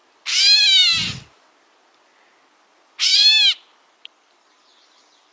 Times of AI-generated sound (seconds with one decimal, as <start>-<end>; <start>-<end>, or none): none